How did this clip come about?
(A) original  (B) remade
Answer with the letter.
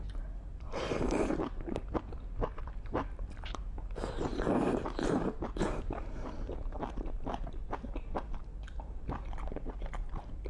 B